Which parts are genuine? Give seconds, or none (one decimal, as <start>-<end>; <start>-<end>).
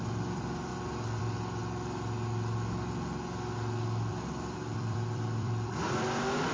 0.7-1.2; 1.6-4.1